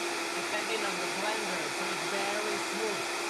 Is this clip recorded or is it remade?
recorded